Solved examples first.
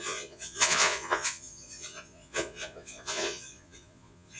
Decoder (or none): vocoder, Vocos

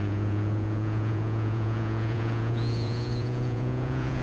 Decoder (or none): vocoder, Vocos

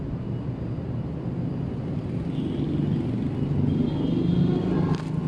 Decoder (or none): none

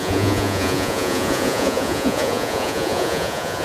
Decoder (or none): vocoder, Vocos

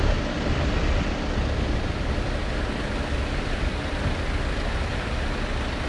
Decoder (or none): none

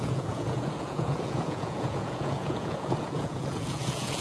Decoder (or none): vocoder, Vocos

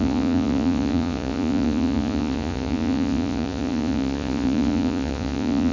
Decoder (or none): vocoder, Vocos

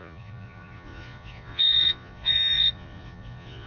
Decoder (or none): vocoder, Vocos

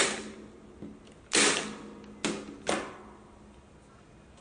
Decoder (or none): none